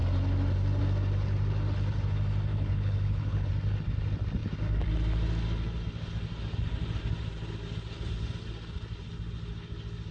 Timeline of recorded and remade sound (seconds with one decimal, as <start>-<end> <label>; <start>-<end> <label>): 0.0-2.5 recorded; 2.5-3.5 remade; 3.5-10.1 recorded